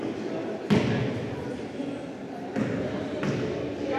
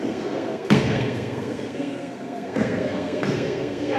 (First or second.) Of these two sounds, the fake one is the second